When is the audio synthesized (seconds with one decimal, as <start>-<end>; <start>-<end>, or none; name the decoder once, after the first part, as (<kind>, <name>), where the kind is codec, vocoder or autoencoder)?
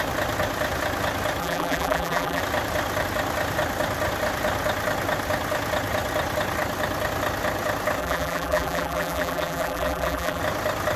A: 1.4-2.4 (vocoder, BigVGAN v2); 8.0-10.4